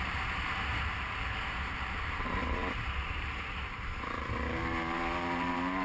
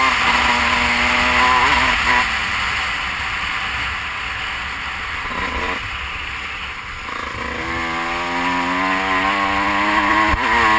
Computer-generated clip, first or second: first